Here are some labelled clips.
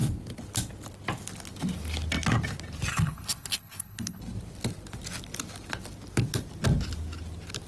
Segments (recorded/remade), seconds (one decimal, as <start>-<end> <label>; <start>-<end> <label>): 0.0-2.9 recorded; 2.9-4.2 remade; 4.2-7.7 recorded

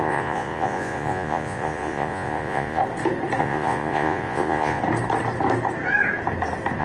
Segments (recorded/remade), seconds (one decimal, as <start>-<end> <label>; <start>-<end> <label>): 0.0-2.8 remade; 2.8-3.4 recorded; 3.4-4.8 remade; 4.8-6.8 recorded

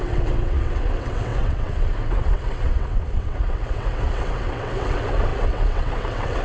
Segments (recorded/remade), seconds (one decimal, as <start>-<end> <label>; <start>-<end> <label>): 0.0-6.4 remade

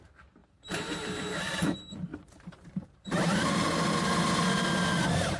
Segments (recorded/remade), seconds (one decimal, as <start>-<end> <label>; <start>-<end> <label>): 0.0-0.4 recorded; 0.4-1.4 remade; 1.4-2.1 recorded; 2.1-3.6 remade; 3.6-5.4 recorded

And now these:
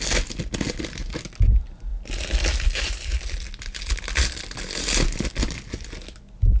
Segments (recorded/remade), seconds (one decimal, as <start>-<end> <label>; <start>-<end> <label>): 0.0-6.6 recorded

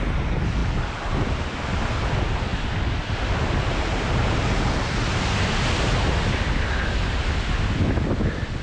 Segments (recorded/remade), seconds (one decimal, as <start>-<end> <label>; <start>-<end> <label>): 0.0-8.6 recorded